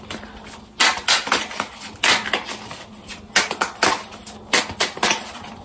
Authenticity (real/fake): real